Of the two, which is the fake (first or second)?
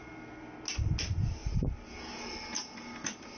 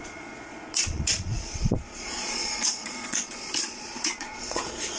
second